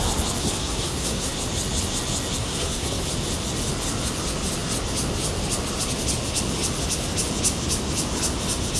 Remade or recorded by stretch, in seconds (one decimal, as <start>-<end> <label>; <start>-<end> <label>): 0.0-0.4 recorded; 0.4-1.3 remade; 1.3-2.4 recorded; 2.4-3.0 remade; 3.0-8.8 recorded